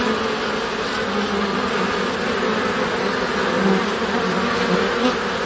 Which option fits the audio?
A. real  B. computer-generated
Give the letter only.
A